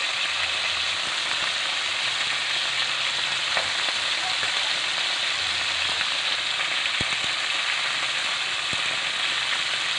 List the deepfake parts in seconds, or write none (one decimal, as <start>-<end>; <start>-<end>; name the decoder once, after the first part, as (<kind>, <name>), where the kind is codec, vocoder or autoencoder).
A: none